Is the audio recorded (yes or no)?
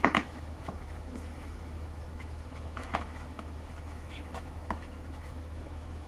no